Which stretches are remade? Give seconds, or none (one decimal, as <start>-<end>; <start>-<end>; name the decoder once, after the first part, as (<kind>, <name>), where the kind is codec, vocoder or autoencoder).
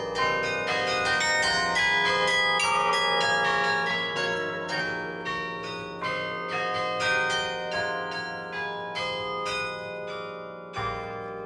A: 3.9-4.8 (codec, SNAC)